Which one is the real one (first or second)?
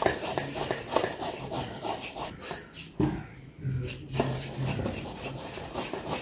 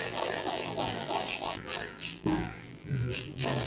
first